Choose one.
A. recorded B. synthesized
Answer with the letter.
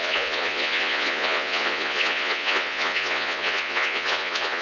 B